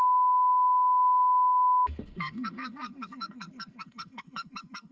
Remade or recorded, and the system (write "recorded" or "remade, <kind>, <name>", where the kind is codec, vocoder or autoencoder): remade, codec, SNAC